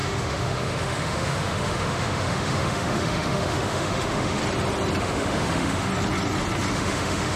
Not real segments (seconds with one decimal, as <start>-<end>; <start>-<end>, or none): 0.0-4.4; 5.0-5.9; 6.7-7.4